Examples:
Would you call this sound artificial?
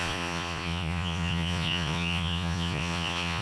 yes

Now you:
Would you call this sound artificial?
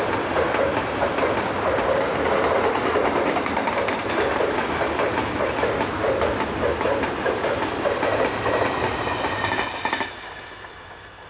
no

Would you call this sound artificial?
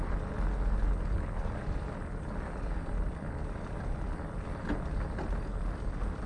no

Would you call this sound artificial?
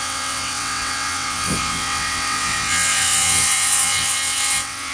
yes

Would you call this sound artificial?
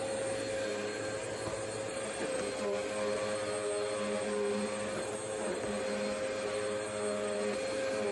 no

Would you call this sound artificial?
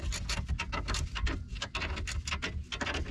no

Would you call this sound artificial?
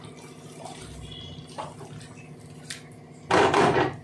no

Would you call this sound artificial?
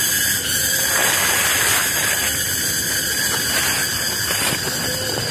no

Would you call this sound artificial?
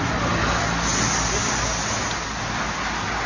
no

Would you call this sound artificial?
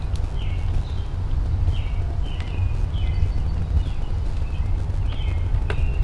no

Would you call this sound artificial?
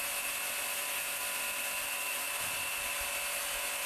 no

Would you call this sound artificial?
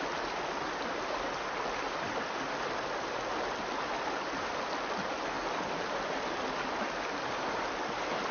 no